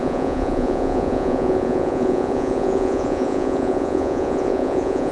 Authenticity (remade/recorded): remade